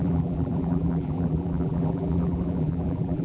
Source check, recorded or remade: remade